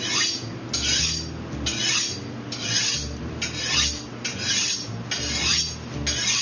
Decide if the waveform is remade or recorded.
recorded